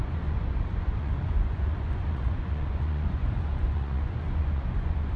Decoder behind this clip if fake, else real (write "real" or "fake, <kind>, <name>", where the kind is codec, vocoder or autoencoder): fake, vocoder, Vocos